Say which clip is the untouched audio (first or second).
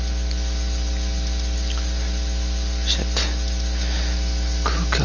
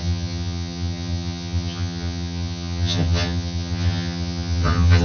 first